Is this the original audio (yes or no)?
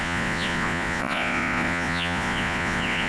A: no